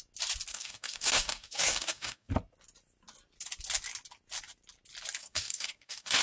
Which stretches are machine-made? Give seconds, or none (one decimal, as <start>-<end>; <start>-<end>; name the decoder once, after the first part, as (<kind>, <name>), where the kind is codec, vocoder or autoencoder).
0.5-2.3 (codec, DAC); 5.2-6.2